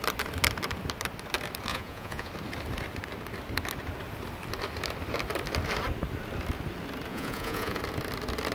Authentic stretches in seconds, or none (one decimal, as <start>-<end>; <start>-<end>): 0.0-1.7; 2.3-7.1; 7.8-8.5